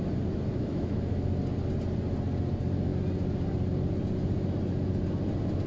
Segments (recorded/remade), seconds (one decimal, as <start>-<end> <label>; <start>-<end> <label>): 0.0-0.5 recorded; 0.5-1.4 remade; 1.4-5.7 recorded